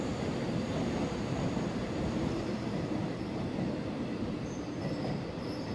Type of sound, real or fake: fake